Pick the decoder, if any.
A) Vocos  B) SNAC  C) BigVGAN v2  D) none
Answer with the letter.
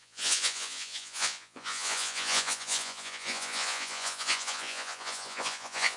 A